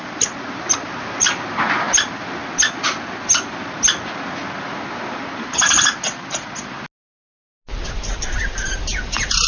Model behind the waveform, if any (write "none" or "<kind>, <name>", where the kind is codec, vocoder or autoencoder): none